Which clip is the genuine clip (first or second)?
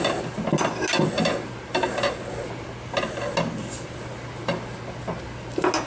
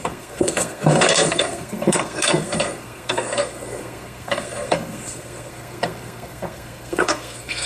first